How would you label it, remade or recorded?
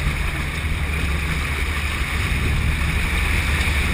recorded